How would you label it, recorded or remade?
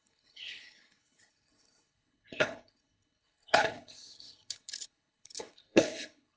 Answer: remade